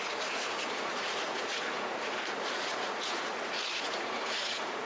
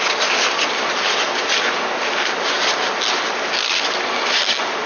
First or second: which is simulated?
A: first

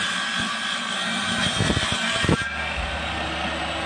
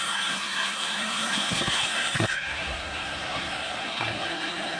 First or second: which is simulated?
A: second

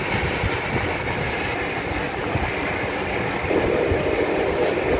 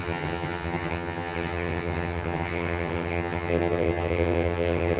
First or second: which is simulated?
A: second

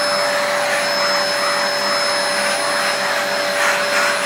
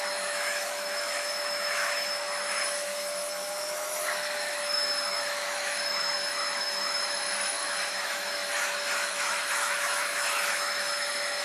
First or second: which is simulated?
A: second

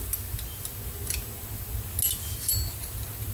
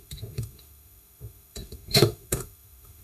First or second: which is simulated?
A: second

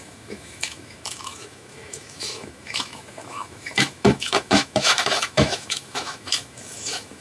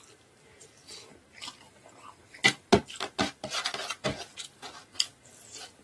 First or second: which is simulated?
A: first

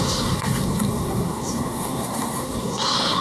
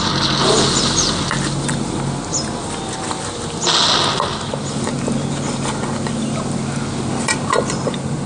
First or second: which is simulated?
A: first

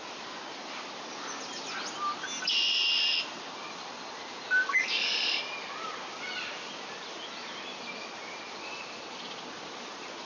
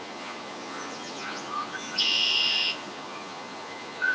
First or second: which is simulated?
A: second